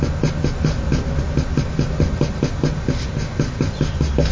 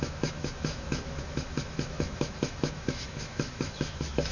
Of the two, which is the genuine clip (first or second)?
first